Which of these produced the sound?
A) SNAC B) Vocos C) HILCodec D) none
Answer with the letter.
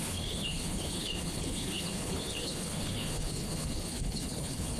C